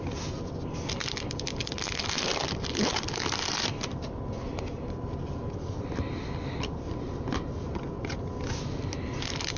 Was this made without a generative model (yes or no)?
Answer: yes